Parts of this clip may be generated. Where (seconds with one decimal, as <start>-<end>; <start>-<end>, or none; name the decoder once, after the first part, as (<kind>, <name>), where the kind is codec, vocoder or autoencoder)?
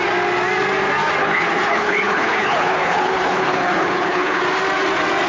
1.2-4.4 (codec, HILCodec)